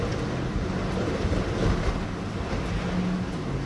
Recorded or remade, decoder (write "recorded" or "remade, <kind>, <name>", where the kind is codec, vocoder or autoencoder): recorded